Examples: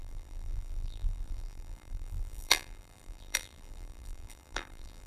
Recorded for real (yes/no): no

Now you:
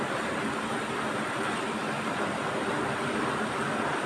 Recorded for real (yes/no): yes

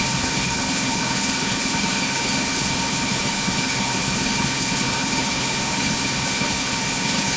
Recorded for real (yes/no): no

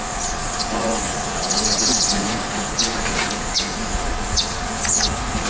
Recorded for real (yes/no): no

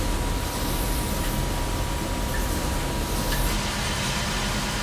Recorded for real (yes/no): yes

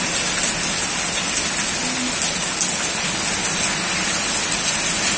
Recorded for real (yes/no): yes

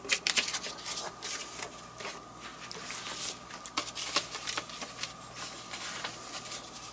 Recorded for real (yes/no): yes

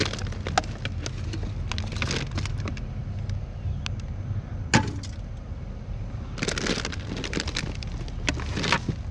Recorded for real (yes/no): yes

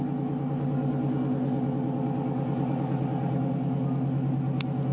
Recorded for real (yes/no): yes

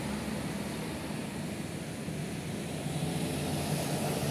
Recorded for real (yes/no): yes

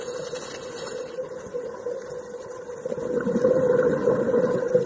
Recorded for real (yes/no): yes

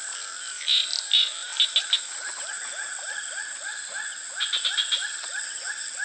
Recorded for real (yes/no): yes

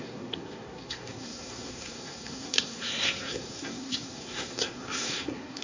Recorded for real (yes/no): no